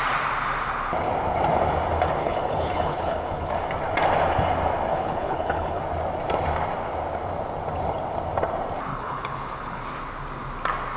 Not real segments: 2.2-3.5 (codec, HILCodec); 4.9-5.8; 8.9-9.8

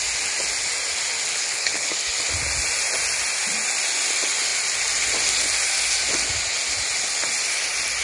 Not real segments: 1.3-1.9 (codec, HILCodec)

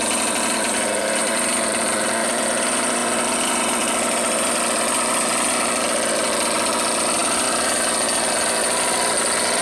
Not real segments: none

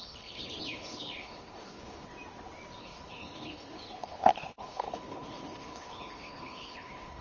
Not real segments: 0.0-2.1 (codec, HILCodec); 2.8-7.2

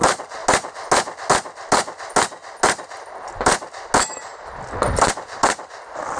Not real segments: none

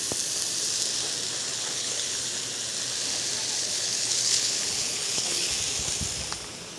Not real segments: 1.5-2.3 (codec, HILCodec); 3.6-5.5